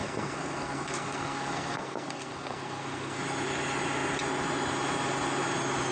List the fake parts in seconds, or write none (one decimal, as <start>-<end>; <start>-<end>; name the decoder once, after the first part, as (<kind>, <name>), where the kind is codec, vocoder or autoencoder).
0.0-3.2 (codec, SNAC)